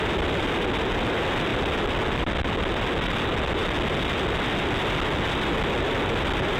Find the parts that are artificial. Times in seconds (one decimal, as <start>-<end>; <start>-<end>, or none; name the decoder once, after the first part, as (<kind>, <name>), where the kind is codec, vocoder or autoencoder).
none